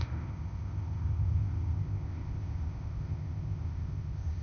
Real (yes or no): no